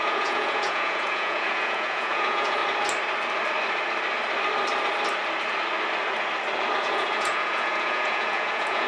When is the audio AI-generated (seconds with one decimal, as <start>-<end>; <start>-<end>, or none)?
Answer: 0.0-2.6; 6.8-8.9